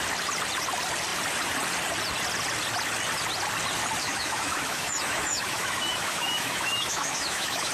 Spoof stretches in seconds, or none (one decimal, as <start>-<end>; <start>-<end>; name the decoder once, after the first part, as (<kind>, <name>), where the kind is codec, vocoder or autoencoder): 4.0-7.7 (autoencoder, DAC-VAE)